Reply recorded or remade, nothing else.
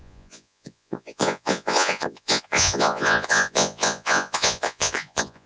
remade